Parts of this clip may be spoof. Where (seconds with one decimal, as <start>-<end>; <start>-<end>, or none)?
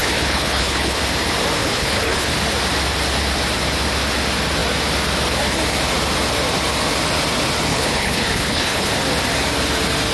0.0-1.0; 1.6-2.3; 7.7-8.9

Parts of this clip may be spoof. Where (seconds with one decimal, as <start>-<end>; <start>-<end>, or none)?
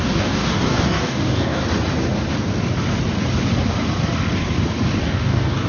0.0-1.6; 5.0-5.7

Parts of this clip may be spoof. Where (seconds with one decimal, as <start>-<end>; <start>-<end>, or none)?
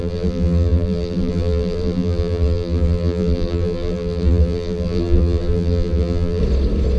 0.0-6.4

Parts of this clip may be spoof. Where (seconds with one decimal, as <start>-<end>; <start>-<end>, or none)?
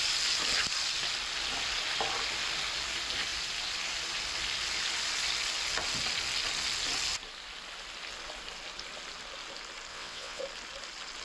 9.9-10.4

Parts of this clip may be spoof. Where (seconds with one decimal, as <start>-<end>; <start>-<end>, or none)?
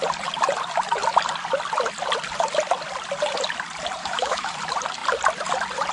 4.0-4.5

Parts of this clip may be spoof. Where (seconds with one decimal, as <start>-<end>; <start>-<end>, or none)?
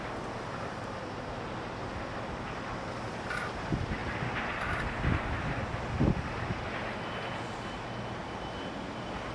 4.0-5.6; 8.2-8.7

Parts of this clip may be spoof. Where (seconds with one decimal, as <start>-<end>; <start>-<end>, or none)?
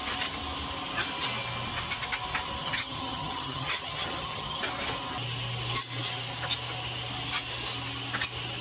2.6-4.6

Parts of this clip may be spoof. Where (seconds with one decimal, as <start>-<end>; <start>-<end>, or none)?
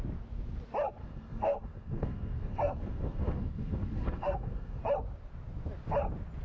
1.0-4.8